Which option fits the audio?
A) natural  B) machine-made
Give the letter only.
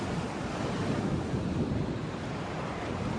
A